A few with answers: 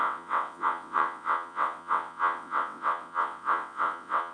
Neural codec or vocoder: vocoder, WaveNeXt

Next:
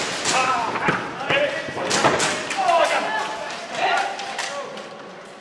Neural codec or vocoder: none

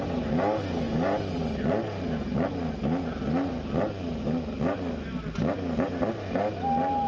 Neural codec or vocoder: none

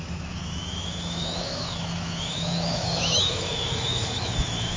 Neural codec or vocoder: autoencoder, DAC-VAE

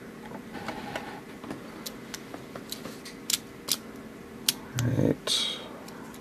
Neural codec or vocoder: none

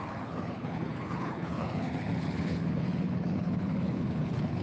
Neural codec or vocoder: codec, HILCodec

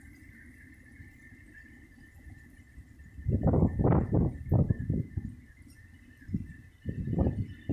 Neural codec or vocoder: vocoder, BigVGAN v2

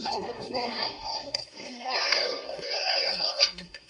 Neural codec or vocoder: codec, SNAC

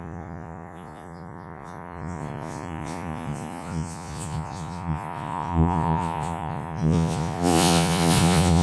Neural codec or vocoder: vocoder, Vocos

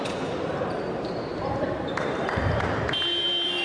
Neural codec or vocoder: vocoder, BigVGAN v2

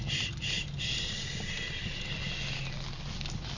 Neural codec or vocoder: none